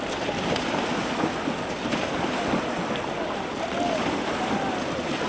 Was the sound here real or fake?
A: real